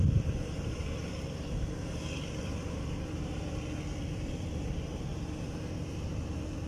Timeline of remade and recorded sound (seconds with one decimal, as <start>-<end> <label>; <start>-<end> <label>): 0.0-6.7 recorded